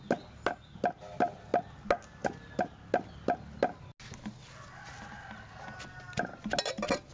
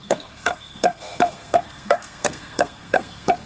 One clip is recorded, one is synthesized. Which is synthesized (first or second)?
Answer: second